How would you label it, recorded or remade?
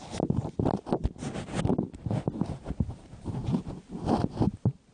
recorded